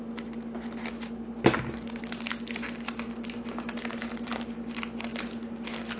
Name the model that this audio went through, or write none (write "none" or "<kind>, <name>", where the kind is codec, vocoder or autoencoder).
none